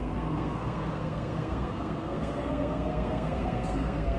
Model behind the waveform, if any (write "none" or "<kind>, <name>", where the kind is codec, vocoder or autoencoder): codec, SNAC